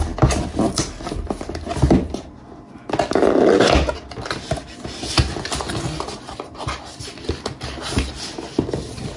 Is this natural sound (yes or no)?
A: yes